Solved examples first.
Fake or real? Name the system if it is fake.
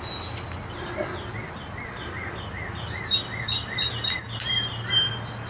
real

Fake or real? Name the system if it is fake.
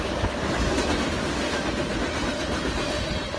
real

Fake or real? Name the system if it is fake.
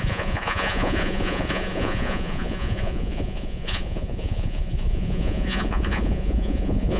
fake, vocoder, Vocos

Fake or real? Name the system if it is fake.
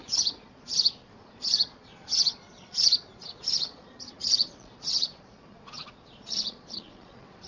fake, vocoder, Vocos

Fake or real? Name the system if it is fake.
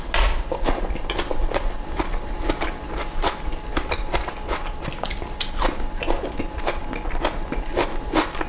real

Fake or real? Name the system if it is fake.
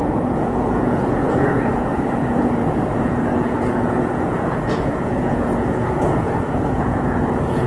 fake, vocoder, Vocos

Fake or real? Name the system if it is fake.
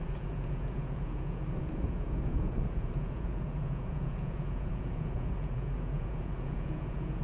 fake, vocoder, Vocos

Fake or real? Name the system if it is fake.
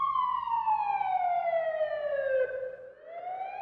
real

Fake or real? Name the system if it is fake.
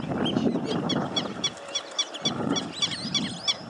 real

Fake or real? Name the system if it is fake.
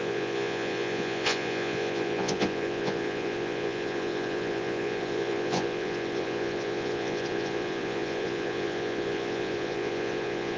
fake, vocoder, Vocos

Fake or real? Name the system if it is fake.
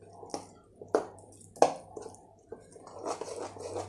real